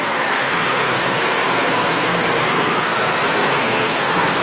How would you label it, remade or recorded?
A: remade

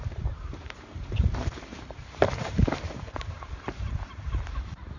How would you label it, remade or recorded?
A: remade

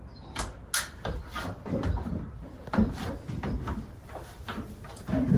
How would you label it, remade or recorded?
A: recorded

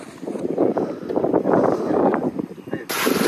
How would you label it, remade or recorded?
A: recorded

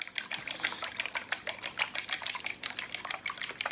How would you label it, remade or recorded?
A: recorded